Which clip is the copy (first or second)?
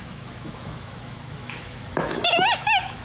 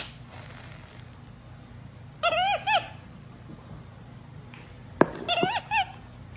first